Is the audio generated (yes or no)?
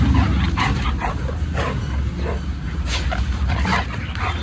no